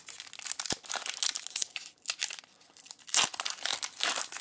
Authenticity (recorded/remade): recorded